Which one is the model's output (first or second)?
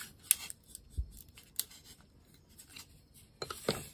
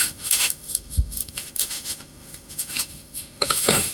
second